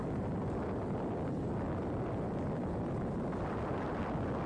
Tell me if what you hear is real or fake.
real